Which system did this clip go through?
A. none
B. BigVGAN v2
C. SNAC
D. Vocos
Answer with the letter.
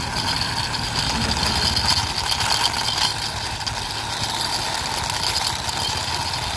A